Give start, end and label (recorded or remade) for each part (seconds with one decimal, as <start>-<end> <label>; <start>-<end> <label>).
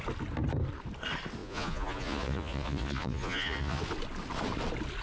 0.0-1.4 recorded; 1.4-3.8 remade; 3.8-5.0 recorded